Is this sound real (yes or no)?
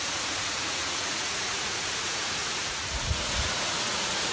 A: no